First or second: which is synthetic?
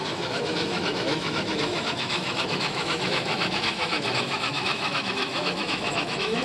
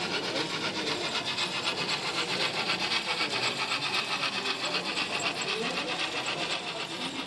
first